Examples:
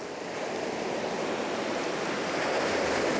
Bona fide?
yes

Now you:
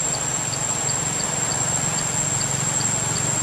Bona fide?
yes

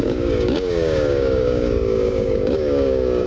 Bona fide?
no